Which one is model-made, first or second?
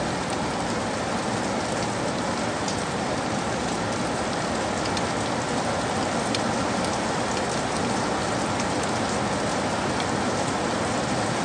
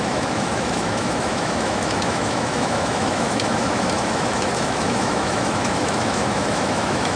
second